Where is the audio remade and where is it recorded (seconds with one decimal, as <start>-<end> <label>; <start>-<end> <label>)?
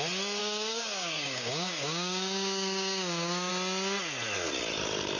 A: 0.0-0.4 recorded; 0.4-3.5 remade; 3.5-5.2 recorded